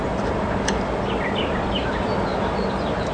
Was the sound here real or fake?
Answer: real